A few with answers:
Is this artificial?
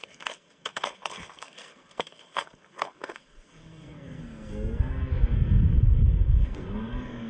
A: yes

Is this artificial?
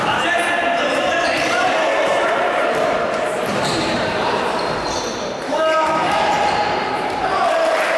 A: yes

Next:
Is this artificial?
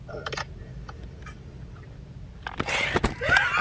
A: no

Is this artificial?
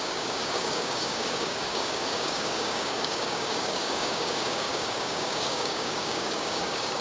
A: yes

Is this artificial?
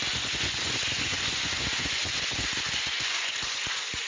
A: yes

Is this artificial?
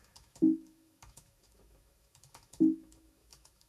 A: yes